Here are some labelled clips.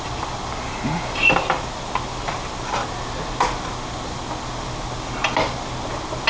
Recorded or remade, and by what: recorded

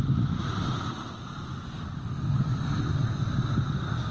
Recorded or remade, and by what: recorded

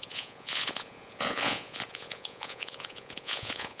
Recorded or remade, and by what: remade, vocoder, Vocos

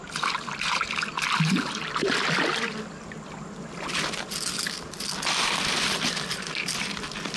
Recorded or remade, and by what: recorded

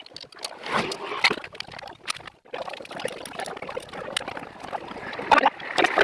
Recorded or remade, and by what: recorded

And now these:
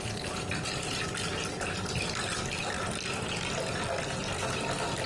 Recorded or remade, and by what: recorded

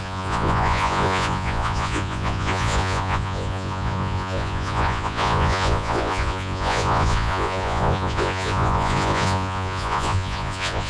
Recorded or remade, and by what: remade, vocoder, Vocos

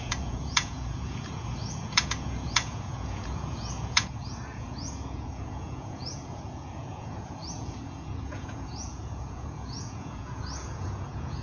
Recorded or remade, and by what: remade, vocoder, Vocos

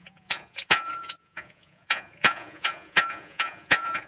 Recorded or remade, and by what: remade, vocoder, Vocos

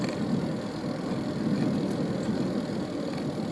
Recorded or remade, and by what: recorded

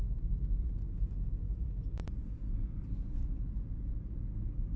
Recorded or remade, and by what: recorded